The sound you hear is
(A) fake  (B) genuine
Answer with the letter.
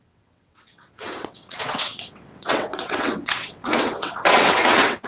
A